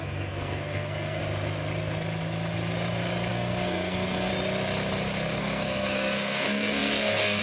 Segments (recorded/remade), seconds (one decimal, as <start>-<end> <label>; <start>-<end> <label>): 0.0-1.2 remade; 1.2-3.3 recorded; 3.3-4.3 remade; 4.3-5.4 recorded; 5.4-7.4 remade